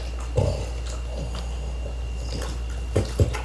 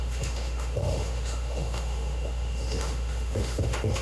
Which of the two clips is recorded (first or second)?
first